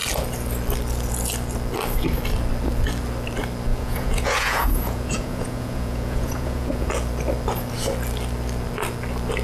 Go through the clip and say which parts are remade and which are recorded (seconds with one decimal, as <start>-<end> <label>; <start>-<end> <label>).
0.0-3.7 recorded; 3.7-6.9 remade; 6.9-9.4 recorded